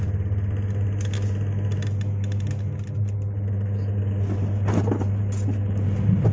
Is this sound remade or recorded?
recorded